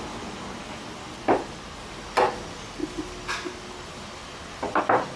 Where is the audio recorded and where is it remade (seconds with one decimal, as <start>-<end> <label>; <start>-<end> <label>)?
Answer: 0.0-5.2 recorded